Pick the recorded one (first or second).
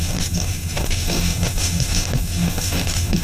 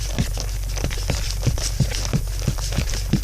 second